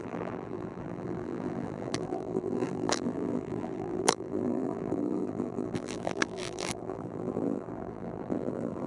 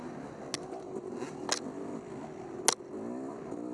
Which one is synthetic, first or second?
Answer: first